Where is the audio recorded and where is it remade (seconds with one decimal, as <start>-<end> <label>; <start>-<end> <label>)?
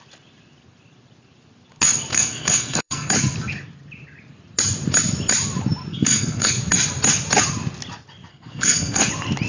0.0-2.1 recorded; 2.1-3.1 remade; 3.1-5.9 recorded; 5.9-6.6 remade; 6.6-8.3 recorded; 8.3-9.1 remade; 9.1-9.5 recorded